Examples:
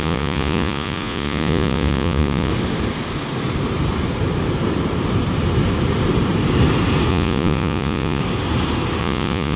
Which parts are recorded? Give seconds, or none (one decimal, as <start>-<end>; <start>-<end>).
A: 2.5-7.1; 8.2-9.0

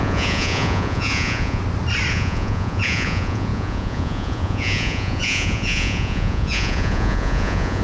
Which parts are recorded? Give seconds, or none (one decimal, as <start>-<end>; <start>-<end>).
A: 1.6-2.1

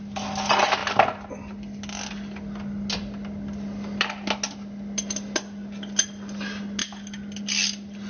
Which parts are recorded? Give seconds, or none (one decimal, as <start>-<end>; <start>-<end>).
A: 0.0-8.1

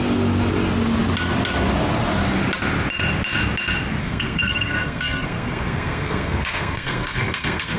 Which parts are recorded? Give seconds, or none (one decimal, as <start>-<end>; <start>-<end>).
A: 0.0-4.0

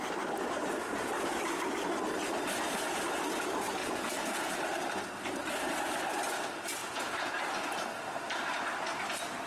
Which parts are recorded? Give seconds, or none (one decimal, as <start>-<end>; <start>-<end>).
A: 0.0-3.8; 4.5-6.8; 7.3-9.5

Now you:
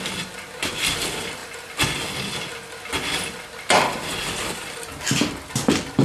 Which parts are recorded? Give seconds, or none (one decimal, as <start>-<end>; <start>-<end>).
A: none

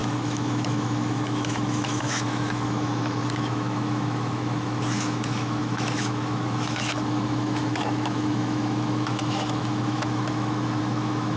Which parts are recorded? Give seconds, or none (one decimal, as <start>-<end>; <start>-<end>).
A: none

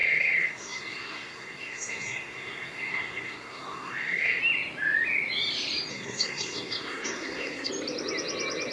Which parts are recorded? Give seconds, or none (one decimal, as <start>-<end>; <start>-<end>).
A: 4.4-5.9; 7.7-8.7